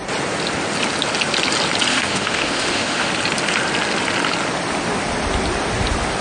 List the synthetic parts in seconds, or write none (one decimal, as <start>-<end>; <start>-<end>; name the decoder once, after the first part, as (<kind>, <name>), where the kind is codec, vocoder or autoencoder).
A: 1.9-3.1 (autoencoder, DAC-VAE)